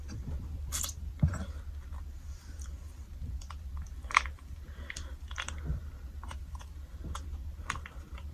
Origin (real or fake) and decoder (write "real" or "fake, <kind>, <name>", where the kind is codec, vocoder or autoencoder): real